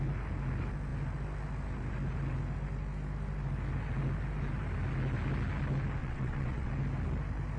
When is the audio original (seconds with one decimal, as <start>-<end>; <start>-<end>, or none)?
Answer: 0.0-6.0; 6.7-7.6